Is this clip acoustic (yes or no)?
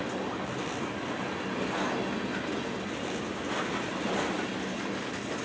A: yes